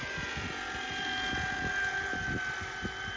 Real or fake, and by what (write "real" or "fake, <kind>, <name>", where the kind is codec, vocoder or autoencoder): real